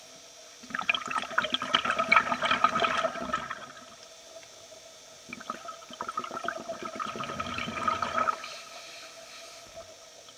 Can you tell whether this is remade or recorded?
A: recorded